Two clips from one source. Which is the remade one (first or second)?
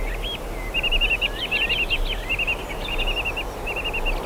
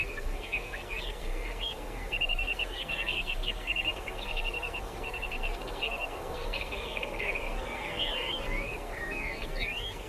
second